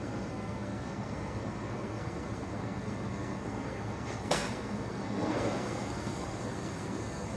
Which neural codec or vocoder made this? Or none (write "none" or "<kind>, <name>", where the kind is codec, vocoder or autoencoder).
codec, SNAC